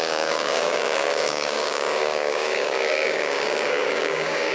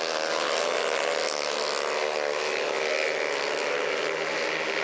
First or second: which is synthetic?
first